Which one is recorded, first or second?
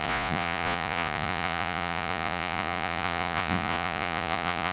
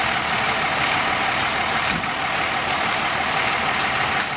second